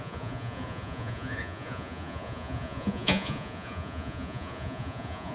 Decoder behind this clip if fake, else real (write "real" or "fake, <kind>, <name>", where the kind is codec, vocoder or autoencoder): fake, vocoder, Vocos